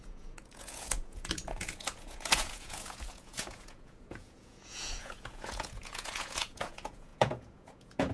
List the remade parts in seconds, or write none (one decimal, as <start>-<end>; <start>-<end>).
0.0-8.1